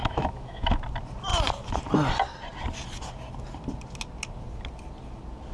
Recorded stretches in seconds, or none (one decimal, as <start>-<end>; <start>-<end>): 0.8-5.5